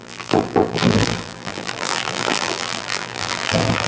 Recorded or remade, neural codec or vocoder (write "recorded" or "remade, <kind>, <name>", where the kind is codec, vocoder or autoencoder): remade, vocoder, BigVGAN v2